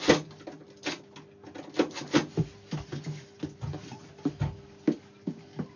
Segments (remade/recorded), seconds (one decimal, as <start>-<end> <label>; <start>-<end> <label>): 0.0-5.8 recorded